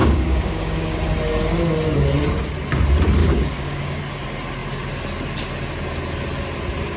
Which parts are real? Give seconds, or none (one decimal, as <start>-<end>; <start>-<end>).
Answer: 1.0-3.2; 4.0-7.0